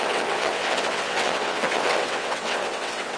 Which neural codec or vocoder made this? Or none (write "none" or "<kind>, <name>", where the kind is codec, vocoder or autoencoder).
vocoder, WaveNeXt